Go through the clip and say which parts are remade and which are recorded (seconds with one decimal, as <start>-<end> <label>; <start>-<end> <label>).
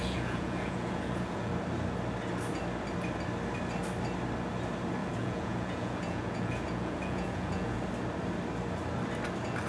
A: 0.0-1.5 remade; 1.5-5.0 recorded; 5.0-7.9 remade; 7.9-9.7 recorded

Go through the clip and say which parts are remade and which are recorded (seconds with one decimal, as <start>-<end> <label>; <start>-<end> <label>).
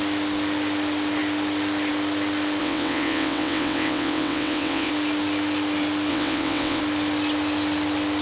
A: 0.0-2.6 recorded; 2.6-4.9 remade; 4.9-6.1 recorded; 6.1-6.8 remade; 6.8-8.2 recorded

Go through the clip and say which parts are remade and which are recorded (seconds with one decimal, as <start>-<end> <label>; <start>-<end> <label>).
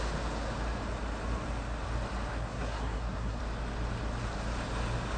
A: 0.0-2.3 recorded; 2.3-3.4 remade; 3.4-5.2 recorded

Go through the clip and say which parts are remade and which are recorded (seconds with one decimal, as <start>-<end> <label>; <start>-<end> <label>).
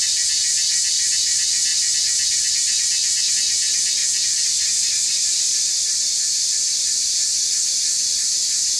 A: 0.0-8.8 recorded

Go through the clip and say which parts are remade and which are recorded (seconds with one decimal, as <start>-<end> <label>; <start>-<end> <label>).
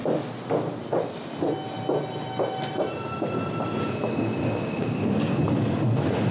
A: 0.0-4.4 recorded; 4.4-5.4 remade; 5.4-6.3 recorded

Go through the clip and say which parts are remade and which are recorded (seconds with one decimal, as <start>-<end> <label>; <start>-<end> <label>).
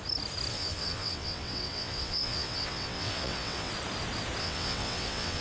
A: 0.0-0.5 recorded; 0.5-3.7 remade; 3.7-4.4 recorded; 4.4-5.4 remade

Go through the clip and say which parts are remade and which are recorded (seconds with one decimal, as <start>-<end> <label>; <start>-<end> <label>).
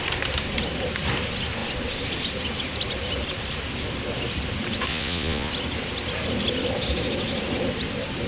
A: 0.0-4.9 recorded; 4.9-5.5 remade; 5.5-8.3 recorded